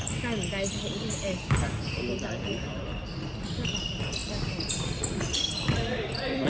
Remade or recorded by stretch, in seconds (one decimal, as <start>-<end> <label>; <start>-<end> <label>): 0.0-6.5 recorded